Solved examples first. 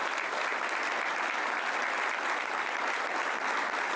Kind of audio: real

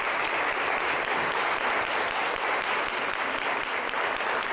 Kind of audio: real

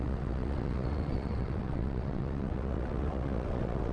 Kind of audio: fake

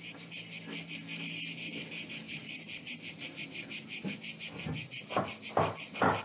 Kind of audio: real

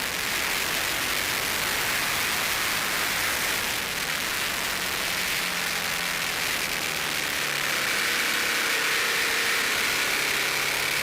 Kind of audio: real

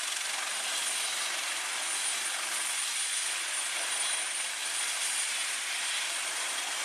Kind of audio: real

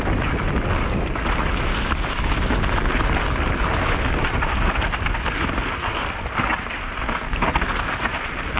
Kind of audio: real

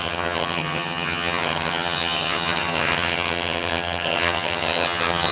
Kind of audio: fake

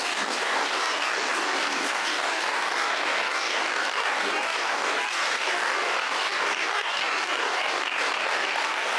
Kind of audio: fake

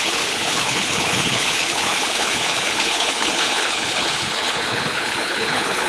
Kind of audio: fake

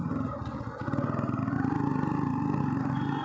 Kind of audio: real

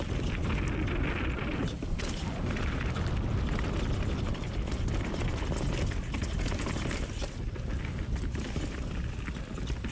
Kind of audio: real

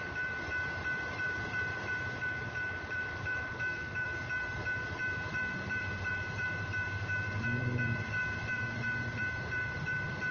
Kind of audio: fake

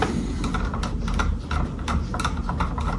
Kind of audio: real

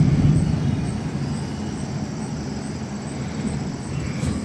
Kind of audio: real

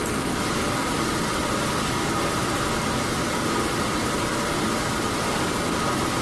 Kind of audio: real